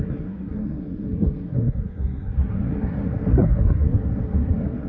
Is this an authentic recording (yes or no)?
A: no